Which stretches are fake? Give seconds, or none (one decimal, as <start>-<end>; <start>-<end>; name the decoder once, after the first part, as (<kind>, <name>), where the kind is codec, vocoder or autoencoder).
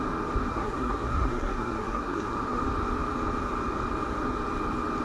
0.5-2.6 (codec, SNAC)